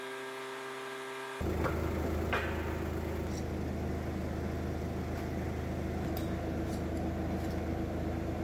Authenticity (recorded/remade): recorded